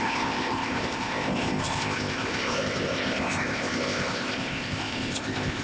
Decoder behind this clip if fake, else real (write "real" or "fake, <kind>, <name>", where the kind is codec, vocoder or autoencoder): fake, codec, ZipCodec